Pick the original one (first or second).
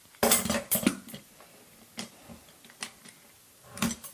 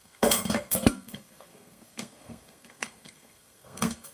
first